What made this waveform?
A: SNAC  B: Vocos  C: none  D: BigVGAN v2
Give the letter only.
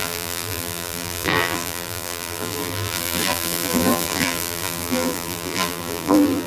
D